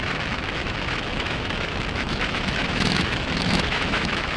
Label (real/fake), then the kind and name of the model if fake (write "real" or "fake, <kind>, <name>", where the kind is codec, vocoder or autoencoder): fake, autoencoder, DAC-VAE